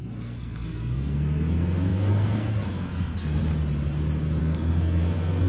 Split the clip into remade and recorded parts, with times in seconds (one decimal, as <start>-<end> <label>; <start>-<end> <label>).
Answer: 0.0-3.4 remade; 3.4-4.4 recorded; 4.4-5.5 remade